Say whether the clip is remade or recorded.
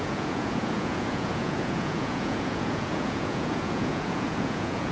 remade